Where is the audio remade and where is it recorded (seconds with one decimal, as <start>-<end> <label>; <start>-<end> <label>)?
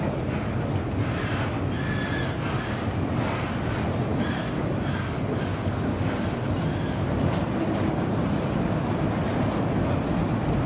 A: 0.0-10.7 recorded